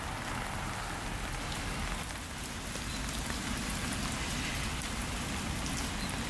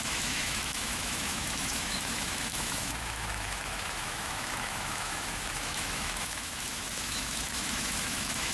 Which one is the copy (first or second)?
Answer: second